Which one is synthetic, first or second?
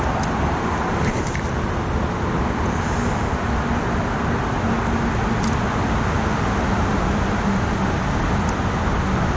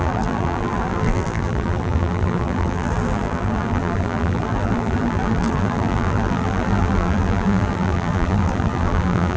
second